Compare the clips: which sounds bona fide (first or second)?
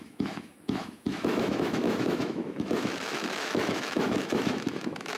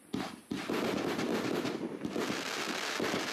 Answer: second